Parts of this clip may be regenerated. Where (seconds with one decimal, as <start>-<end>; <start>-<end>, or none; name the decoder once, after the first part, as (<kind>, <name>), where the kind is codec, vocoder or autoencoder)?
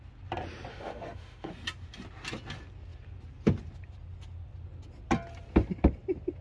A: 0.7-1.5 (autoencoder, DAC-VAE)